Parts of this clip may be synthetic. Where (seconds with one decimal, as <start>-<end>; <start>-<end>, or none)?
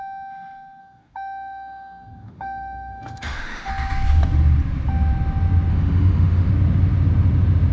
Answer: 0.8-3.7; 5.7-6.5